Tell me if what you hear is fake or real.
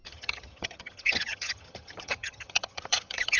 fake